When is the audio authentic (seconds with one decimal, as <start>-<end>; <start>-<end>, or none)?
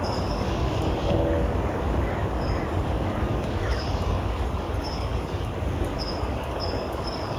none